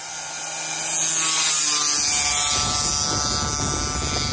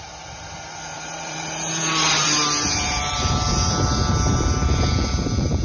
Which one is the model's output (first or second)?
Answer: second